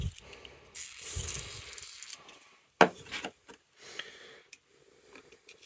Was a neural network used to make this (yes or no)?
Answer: no